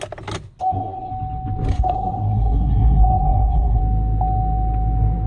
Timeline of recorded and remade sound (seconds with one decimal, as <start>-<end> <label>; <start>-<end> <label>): 0.0-0.6 recorded; 0.6-1.1 remade; 1.1-1.7 recorded; 1.7-3.8 remade; 3.8-5.3 recorded